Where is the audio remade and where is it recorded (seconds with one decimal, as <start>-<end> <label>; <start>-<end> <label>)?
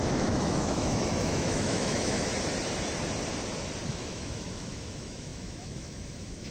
0.0-2.3 remade; 2.3-3.9 recorded; 3.9-6.5 remade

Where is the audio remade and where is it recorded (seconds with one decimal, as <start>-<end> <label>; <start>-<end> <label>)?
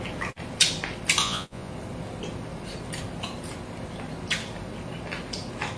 0.0-1.2 recorded; 1.2-1.7 remade; 1.7-5.8 recorded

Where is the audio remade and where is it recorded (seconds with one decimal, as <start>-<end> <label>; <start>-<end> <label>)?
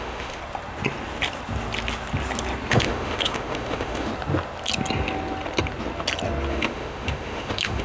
0.0-0.4 remade; 0.4-2.7 recorded; 2.7-4.1 remade; 4.1-6.5 recorded; 6.5-7.8 remade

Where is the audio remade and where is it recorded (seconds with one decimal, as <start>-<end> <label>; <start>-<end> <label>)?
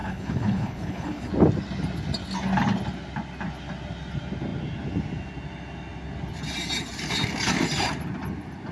0.0-1.3 remade; 1.3-8.7 recorded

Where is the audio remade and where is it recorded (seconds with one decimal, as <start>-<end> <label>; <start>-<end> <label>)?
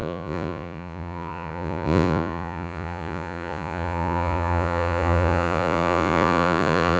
0.0-7.0 remade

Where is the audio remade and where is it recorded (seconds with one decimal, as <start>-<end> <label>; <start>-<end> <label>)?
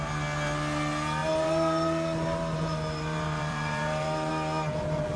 0.0-1.2 recorded; 1.2-4.3 remade; 4.3-5.2 recorded